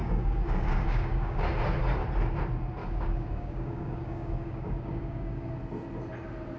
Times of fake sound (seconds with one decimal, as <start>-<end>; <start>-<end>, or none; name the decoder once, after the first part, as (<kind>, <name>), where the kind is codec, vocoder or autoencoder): 0.0-1.5 (codec, DAC); 2.8-5.5